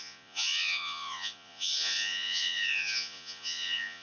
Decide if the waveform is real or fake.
fake